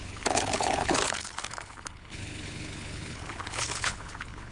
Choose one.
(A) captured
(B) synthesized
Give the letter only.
B